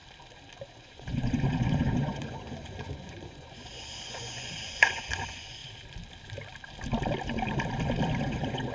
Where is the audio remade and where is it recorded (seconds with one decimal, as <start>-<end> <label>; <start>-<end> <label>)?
0.0-0.7 recorded; 0.7-5.6 remade; 5.6-8.2 recorded; 8.2-8.7 remade